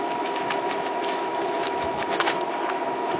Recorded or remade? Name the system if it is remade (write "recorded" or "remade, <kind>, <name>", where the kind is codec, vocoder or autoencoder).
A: remade, autoencoder, DAC-VAE